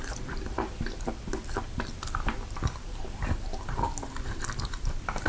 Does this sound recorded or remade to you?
remade